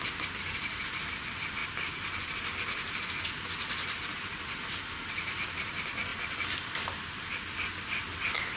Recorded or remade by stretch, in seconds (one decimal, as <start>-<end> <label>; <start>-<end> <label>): 0.0-8.6 recorded